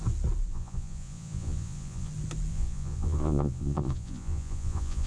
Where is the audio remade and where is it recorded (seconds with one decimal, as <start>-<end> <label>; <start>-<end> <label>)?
0.0-0.5 recorded; 0.5-2.1 remade; 2.1-2.5 recorded; 2.5-5.1 remade